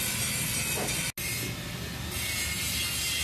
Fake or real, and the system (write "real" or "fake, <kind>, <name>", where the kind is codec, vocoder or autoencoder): real